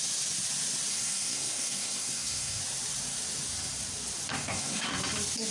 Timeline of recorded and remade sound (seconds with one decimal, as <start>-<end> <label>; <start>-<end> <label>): 0.0-0.9 recorded; 0.9-2.6 remade; 2.6-4.3 recorded; 4.3-4.9 remade; 4.9-5.5 recorded